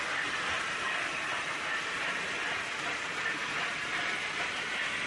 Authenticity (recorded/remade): recorded